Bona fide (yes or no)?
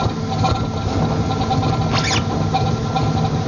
yes